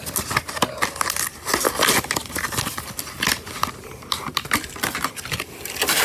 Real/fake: real